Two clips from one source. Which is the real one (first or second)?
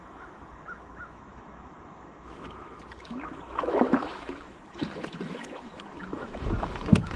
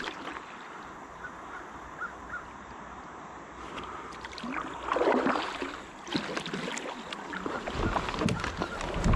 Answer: second